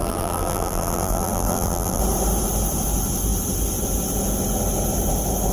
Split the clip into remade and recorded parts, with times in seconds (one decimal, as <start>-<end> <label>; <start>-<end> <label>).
0.0-2.0 remade; 2.0-5.5 recorded